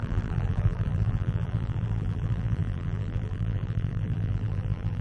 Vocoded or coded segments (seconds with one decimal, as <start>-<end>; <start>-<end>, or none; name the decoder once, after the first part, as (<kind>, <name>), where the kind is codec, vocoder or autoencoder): 0.0-5.0 (vocoder, BigVGAN v2)